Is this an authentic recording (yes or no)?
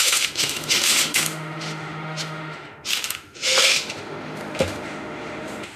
no